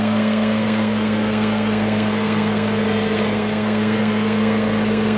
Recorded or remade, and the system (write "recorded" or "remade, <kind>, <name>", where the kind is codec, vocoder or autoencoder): remade, codec, SNAC